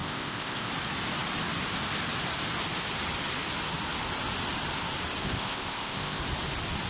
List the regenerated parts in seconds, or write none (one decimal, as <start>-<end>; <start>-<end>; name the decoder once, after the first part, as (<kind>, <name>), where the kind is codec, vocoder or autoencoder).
0.0-0.7 (codec, ZipCodec); 5.2-6.2